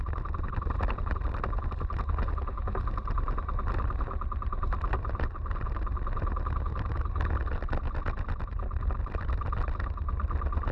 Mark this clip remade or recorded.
recorded